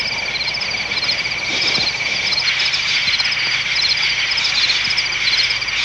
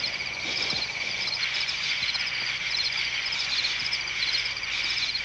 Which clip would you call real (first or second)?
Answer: first